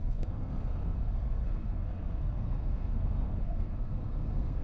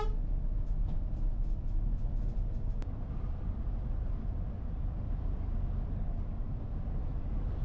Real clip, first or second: second